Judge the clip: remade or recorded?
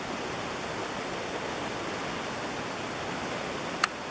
recorded